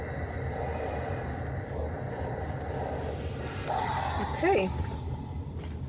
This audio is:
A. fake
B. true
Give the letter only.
B